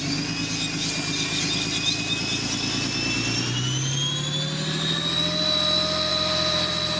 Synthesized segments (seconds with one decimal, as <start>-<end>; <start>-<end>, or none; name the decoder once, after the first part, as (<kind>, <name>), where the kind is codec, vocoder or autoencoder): 6.1-7.0 (vocoder, BigVGAN v2)